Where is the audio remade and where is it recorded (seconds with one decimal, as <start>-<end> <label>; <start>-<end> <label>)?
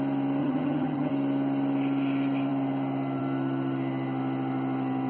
0.0-0.4 recorded; 0.4-1.1 remade; 1.1-5.1 recorded